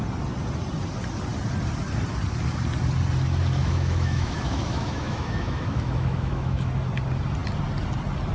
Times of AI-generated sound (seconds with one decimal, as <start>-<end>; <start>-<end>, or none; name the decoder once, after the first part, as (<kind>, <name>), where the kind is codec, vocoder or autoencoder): 3.6-6.7 (autoencoder, DAC-VAE)